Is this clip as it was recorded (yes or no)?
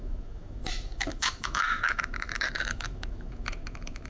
no